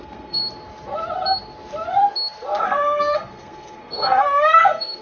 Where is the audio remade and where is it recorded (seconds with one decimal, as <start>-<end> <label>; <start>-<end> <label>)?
0.0-0.4 remade; 0.4-2.6 recorded; 2.6-5.0 remade